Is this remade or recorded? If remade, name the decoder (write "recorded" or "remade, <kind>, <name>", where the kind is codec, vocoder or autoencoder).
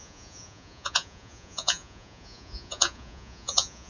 remade, vocoder, Vocos